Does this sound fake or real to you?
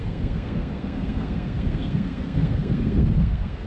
fake